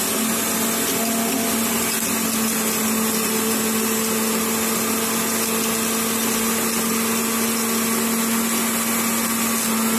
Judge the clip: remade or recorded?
recorded